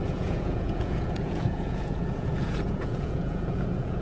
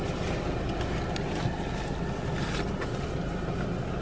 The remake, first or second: first